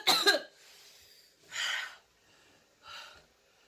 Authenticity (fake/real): real